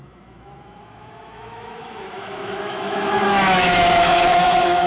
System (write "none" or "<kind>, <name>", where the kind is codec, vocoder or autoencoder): autoencoder, DAC-VAE